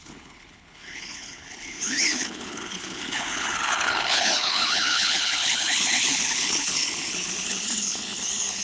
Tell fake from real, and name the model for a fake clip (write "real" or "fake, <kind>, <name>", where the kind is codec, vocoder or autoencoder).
fake, codec, HILCodec